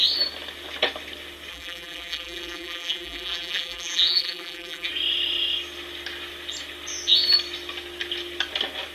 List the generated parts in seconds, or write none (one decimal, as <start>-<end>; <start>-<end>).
1.5-4.9